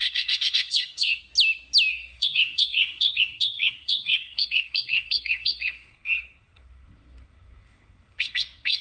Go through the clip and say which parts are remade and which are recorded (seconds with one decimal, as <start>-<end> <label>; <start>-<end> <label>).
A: 0.0-1.2 remade; 1.2-1.9 recorded; 1.9-8.8 remade